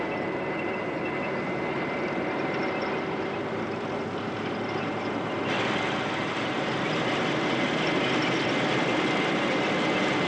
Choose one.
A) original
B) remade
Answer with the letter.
B